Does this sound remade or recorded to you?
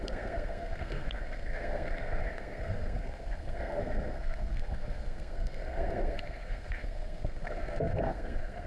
remade